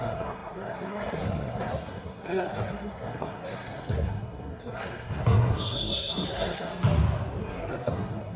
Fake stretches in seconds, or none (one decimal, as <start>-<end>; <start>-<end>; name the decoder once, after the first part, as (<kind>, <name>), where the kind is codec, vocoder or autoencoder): 0.0-6.7 (codec, SNAC); 7.4-8.4